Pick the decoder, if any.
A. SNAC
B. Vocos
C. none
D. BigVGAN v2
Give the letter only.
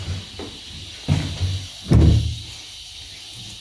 C